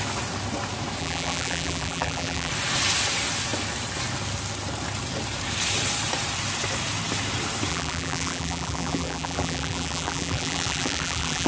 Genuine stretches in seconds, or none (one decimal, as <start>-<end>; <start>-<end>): 0.0-1.0; 2.5-7.7